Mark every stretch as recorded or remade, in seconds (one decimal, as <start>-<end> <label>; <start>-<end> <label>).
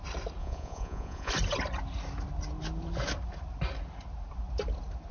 0.0-0.4 recorded; 0.4-1.3 remade; 1.3-5.1 recorded